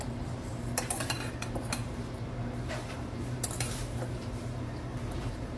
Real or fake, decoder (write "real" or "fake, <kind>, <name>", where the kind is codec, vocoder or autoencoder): fake, vocoder, BigVGAN v2